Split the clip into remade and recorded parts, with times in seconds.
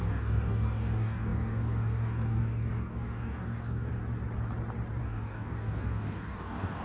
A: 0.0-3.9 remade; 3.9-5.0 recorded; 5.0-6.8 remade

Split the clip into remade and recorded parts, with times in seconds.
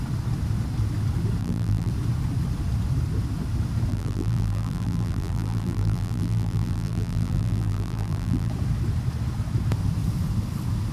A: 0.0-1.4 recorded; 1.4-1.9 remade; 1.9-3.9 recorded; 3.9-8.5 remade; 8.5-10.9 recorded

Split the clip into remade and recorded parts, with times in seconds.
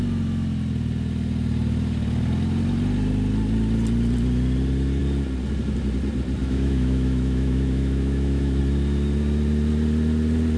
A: 0.0-6.4 recorded; 6.4-8.6 remade; 8.6-10.6 recorded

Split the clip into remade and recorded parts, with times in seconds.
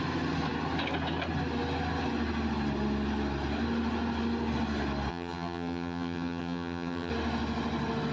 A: 0.0-5.1 recorded; 5.1-7.1 remade; 7.1-8.1 recorded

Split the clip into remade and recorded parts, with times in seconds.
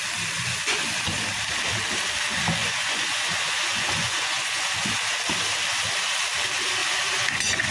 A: 0.0-0.4 recorded; 0.4-1.2 remade; 1.2-2.6 recorded; 2.6-4.9 remade; 4.9-6.8 recorded; 6.8-7.7 remade